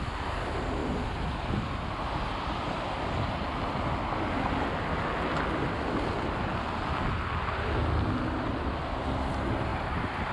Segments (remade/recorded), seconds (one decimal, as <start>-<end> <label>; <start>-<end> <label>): 0.0-10.3 recorded